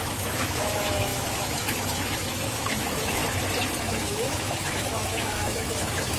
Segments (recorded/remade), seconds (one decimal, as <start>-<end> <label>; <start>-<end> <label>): 0.0-3.2 remade; 3.2-3.8 recorded; 3.8-6.2 remade